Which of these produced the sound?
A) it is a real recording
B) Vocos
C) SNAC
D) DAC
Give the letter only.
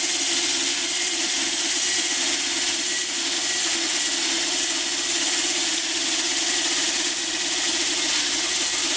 A